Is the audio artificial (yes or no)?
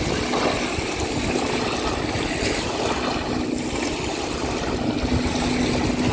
no